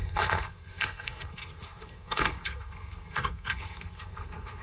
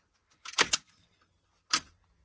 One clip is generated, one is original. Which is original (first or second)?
second